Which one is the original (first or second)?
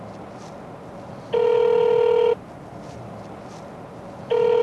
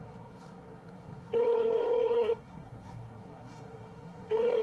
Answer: first